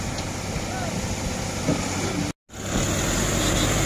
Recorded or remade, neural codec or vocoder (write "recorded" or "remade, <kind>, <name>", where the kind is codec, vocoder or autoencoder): recorded